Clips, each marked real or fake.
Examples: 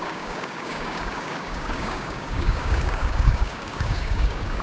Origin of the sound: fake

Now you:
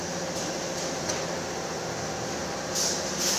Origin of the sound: real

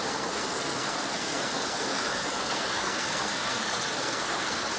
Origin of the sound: fake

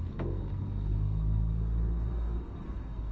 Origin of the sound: fake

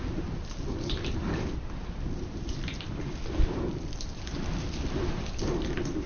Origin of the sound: fake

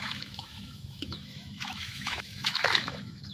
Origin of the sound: fake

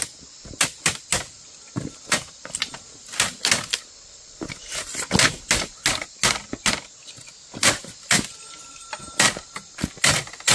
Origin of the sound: real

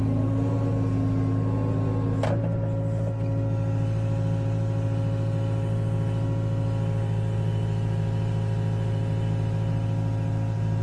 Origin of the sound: real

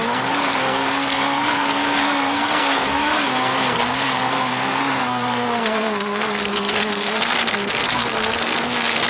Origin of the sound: fake